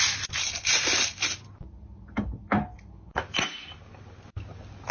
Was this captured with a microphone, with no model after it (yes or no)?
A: yes